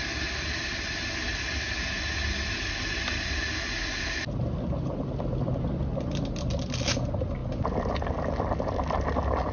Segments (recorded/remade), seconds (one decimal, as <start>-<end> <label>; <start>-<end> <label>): 0.0-9.5 recorded